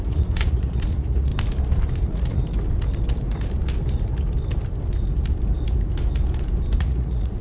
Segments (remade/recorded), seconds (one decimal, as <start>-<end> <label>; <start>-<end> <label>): 0.0-1.3 remade; 1.3-2.0 recorded; 2.0-2.4 remade; 2.4-6.8 recorded; 6.8-7.4 remade